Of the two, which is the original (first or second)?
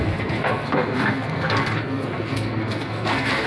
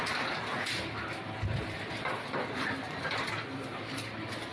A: second